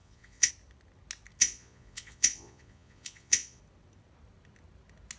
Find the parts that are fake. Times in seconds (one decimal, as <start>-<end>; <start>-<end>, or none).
0.0-0.5; 1.4-3.6